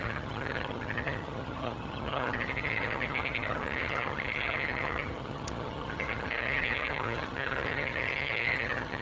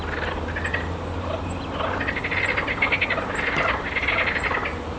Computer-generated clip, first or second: first